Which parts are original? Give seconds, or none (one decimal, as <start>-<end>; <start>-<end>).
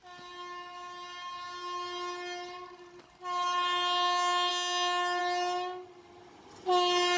0.0-7.2